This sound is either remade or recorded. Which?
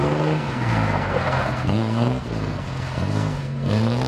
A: remade